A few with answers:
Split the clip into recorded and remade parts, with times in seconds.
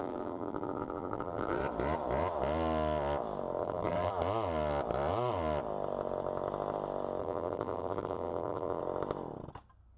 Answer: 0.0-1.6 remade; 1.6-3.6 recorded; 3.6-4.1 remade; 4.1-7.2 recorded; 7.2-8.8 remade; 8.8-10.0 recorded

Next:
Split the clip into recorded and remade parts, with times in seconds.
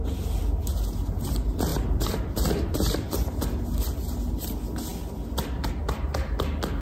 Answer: 0.0-1.7 recorded; 1.7-3.1 remade; 3.1-6.8 recorded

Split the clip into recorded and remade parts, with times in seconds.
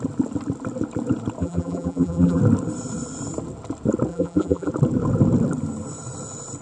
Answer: 0.0-1.4 recorded; 1.4-2.4 remade; 2.4-4.1 recorded; 4.1-4.7 remade; 4.7-6.6 recorded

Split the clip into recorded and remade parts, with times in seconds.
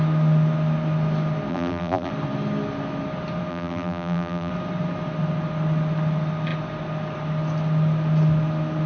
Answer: 0.0-1.5 recorded; 1.5-2.1 remade; 2.1-3.5 recorded; 3.5-4.5 remade; 4.5-8.9 recorded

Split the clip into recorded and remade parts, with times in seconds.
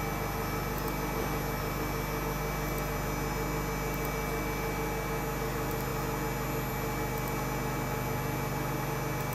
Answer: 0.0-9.3 recorded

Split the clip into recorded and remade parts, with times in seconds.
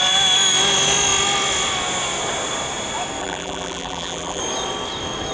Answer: 0.0-3.2 recorded; 3.2-4.4 remade; 4.4-5.3 recorded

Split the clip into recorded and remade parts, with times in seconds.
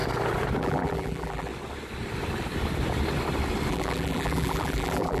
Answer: 0.0-0.6 recorded; 0.6-1.5 remade; 1.5-3.7 recorded; 3.7-5.2 remade